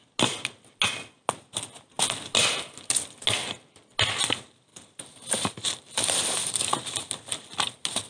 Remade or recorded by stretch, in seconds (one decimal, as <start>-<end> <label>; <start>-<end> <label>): 0.0-4.7 recorded; 4.7-6.7 remade; 6.7-8.1 recorded